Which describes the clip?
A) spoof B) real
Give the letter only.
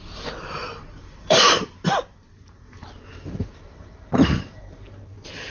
A